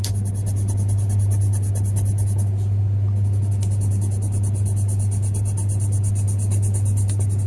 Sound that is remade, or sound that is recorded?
recorded